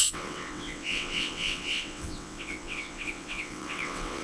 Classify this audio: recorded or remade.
remade